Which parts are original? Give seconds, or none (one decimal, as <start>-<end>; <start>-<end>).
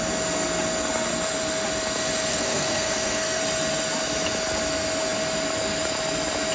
0.0-2.3; 3.4-6.5